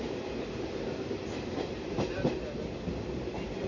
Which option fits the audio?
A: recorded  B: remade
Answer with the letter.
A